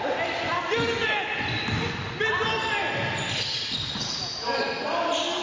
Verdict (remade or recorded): recorded